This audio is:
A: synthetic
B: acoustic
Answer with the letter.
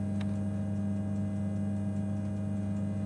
B